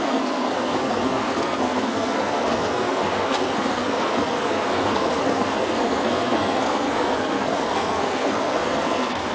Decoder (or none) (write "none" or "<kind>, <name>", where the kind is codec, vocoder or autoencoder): codec, SNAC